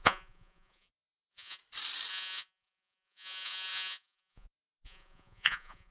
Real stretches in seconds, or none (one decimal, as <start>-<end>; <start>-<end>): 1.6-2.1